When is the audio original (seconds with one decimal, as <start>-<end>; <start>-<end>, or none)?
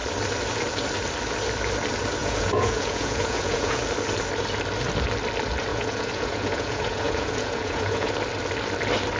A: 0.0-2.2; 3.8-5.7; 8.1-9.2